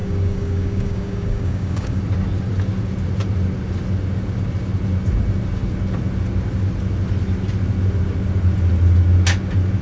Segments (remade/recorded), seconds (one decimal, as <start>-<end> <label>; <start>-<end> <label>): 0.0-2.0 remade; 2.0-9.8 recorded

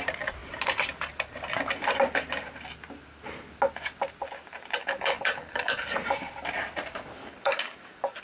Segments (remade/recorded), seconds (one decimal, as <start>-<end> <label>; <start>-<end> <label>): 0.0-4.8 recorded; 4.8-6.0 remade; 6.0-7.2 recorded; 7.2-8.2 remade